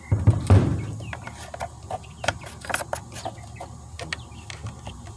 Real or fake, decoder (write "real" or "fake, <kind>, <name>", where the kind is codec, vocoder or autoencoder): real